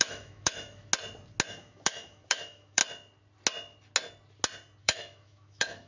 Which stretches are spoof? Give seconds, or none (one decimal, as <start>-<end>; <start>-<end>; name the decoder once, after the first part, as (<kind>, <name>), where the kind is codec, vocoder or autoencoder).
0.0-0.9 (autoencoder, DAC-VAE); 1.5-2.8; 4.8-5.9